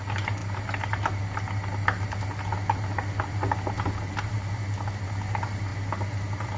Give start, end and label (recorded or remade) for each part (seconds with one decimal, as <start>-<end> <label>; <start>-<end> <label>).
0.0-6.6 recorded